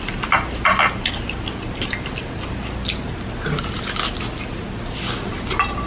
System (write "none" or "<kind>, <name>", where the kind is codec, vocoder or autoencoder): none